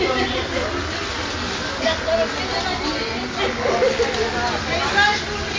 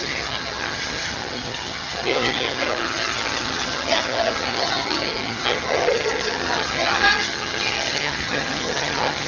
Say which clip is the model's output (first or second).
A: second